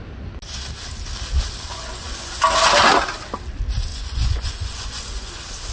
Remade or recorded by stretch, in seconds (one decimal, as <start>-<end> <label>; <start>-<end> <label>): 0.0-1.7 recorded; 1.7-2.4 remade; 2.4-3.9 recorded; 3.9-5.3 remade; 5.3-5.7 recorded

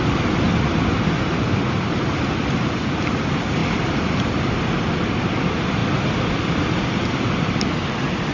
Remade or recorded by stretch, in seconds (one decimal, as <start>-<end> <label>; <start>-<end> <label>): 0.0-8.3 recorded

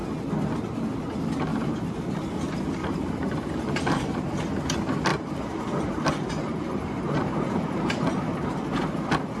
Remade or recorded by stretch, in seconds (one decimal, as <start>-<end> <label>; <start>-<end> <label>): 0.0-1.5 recorded; 1.5-2.4 remade; 2.4-2.8 recorded; 2.8-4.3 remade; 4.3-5.1 recorded; 5.1-7.6 remade; 7.6-9.4 recorded

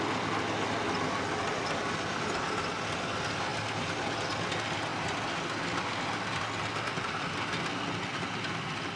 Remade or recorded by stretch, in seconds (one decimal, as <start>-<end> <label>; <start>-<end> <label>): 0.0-9.0 recorded

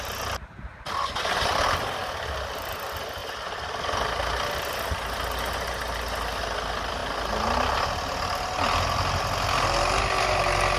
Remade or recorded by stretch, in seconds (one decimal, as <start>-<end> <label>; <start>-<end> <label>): 0.0-10.8 recorded

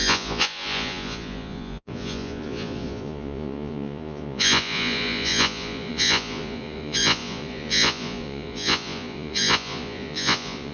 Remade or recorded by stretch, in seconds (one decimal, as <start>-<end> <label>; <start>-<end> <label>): 0.0-10.7 remade